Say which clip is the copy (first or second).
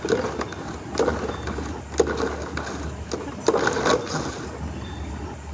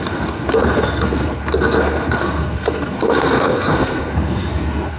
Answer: second